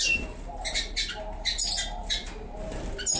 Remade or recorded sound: recorded